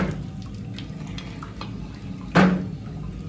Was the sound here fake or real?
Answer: real